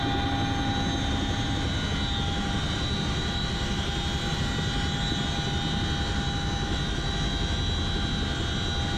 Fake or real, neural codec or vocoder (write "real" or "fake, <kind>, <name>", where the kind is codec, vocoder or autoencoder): real